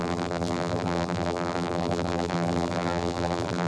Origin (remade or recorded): remade